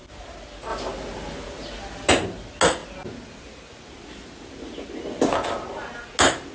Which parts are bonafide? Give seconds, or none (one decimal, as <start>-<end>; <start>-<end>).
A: 0.0-6.5